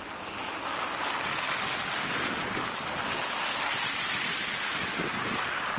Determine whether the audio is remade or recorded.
recorded